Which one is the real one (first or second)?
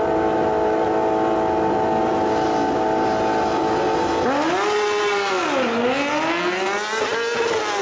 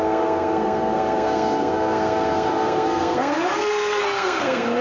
first